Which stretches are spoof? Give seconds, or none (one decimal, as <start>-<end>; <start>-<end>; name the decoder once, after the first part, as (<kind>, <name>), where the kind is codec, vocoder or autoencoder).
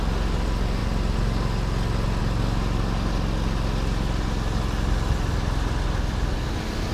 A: none